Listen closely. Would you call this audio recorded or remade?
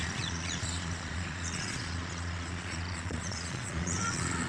remade